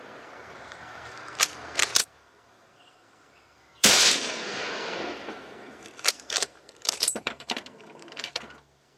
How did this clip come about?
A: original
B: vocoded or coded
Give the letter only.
B